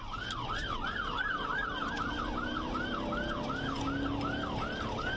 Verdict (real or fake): real